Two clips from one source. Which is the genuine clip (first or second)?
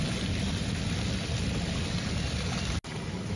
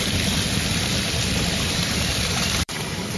first